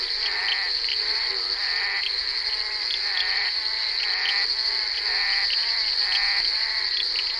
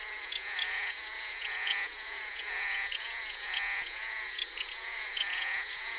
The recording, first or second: first